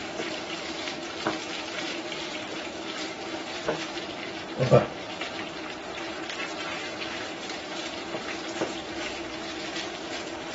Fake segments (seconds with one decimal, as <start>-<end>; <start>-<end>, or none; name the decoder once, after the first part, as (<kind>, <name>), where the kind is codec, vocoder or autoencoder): 0.0-1.0 (vocoder, BigVGAN v2); 1.6-10.5